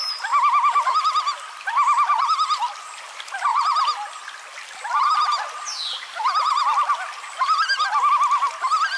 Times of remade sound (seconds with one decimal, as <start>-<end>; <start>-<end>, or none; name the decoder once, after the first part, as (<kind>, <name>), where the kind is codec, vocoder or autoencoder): none